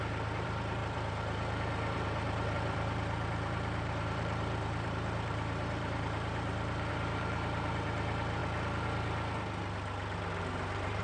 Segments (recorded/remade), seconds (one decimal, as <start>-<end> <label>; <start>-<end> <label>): 0.0-8.4 remade; 8.4-10.4 recorded; 10.4-11.0 remade